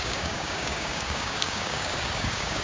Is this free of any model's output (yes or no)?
no